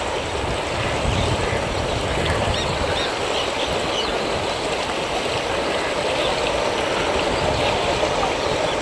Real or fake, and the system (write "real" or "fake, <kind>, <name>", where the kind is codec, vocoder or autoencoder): real